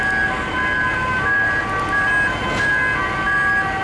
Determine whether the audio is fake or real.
real